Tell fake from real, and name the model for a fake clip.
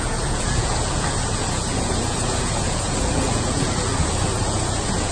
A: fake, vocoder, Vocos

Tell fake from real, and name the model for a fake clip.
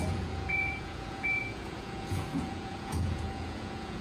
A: fake, vocoder, Vocos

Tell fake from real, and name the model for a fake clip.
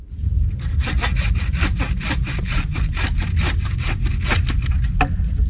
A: real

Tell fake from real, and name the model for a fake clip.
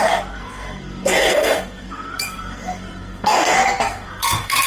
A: fake, codec, SNAC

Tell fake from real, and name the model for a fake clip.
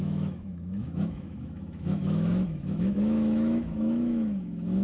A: fake, autoencoder, DAC-VAE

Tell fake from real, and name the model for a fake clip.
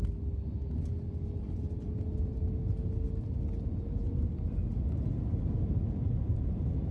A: real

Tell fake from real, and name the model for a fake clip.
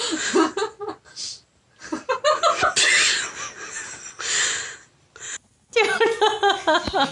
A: real